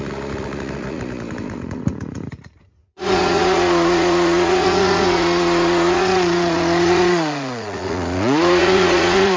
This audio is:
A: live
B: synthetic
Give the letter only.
B